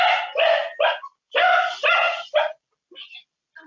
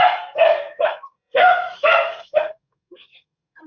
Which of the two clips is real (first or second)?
first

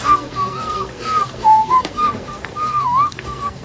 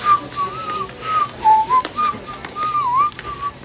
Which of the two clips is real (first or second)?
second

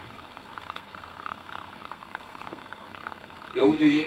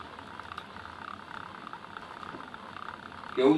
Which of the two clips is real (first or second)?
second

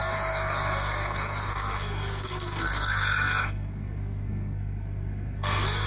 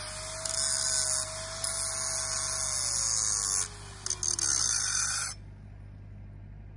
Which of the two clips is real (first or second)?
second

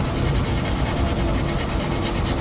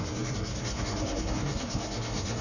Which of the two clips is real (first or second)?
first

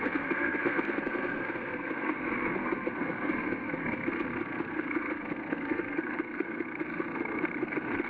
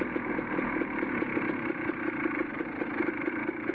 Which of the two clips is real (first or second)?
second